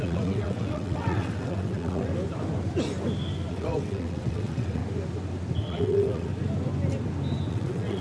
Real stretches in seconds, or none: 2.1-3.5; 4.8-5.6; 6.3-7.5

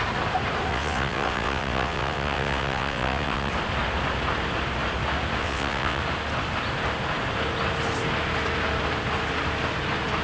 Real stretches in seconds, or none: 0.0-0.7; 3.5-5.4; 6.0-10.2

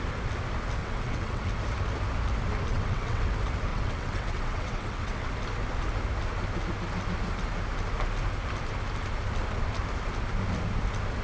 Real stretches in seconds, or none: 0.0-0.8; 1.4-2.7; 3.3-3.7; 5.3-11.2

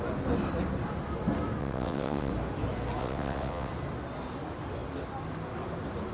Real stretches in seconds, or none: 0.0-1.6; 2.3-3.0; 3.7-6.1